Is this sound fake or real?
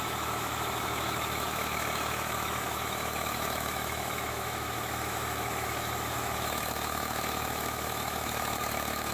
fake